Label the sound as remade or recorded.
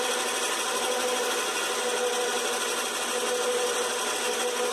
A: recorded